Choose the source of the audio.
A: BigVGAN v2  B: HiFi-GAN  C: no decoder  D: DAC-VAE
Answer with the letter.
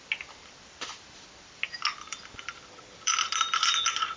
A